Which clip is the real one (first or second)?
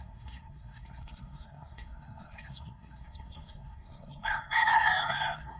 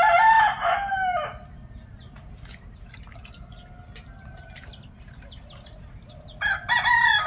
second